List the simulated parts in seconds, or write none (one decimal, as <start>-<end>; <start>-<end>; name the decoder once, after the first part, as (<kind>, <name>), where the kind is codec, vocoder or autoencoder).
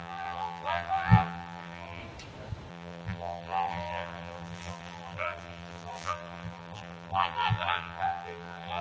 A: 0.0-2.0 (vocoder, BigVGAN v2); 2.7-8.8